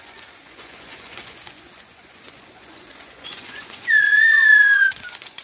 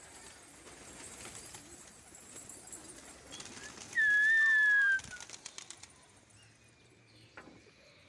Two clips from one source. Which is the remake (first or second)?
first